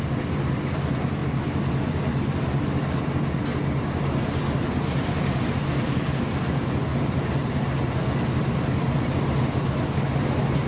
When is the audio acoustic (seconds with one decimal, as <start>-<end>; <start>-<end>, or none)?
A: 0.0-10.7